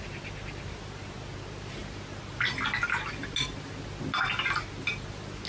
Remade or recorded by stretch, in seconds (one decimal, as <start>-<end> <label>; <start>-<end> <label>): 0.0-5.5 recorded

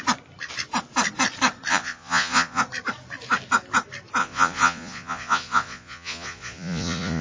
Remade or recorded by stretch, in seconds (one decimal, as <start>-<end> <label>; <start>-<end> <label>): 0.0-1.7 recorded; 1.7-2.6 remade; 2.6-4.2 recorded; 4.2-7.2 remade

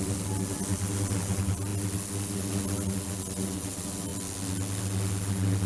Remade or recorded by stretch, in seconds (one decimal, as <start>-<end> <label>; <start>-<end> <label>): 0.0-5.7 recorded

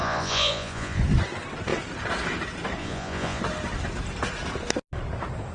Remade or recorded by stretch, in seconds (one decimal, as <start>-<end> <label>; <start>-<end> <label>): 0.0-1.0 remade; 1.0-2.8 recorded; 2.8-3.4 remade; 3.4-5.5 recorded

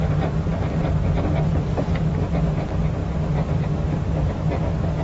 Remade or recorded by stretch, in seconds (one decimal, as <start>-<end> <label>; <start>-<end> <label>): 0.0-5.0 recorded

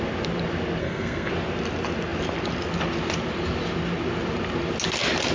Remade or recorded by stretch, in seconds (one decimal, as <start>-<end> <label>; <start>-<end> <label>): 0.0-0.8 recorded; 0.8-1.3 remade; 1.3-5.3 recorded

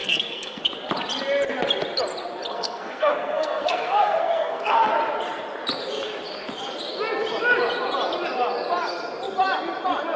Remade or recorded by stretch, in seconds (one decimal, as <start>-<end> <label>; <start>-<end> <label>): 0.0-0.6 remade; 0.6-2.5 recorded; 2.5-4.9 remade; 4.9-10.2 recorded